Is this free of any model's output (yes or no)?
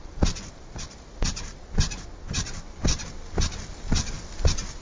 yes